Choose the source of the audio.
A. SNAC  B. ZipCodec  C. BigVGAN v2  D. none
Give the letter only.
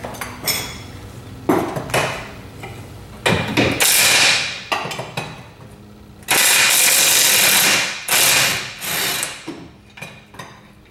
D